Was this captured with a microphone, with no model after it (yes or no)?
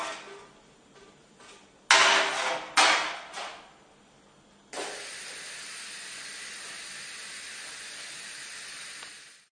yes